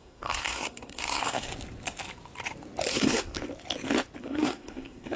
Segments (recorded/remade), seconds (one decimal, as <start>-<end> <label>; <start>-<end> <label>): 0.0-1.5 remade; 1.5-2.9 recorded; 2.9-3.3 remade; 3.3-4.2 recorded; 4.2-5.2 remade